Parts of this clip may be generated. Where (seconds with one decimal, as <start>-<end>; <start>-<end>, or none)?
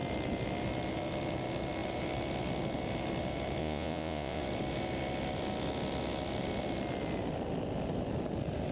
3.6-4.4